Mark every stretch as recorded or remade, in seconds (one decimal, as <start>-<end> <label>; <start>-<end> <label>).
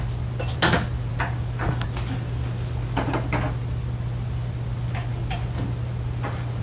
0.0-6.6 recorded